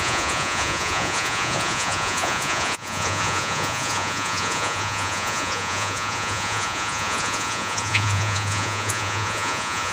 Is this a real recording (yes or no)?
no